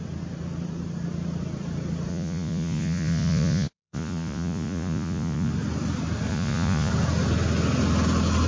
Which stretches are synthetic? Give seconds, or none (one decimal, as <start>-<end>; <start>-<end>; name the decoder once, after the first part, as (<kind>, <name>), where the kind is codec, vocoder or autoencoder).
2.1-5.5 (vocoder, Vocos); 6.3-6.9